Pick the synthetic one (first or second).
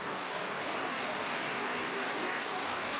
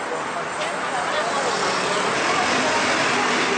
first